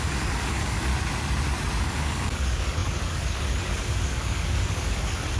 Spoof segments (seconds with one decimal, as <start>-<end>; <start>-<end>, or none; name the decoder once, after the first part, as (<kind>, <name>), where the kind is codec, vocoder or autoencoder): 0.0-0.9 (codec, DAC); 1.8-5.4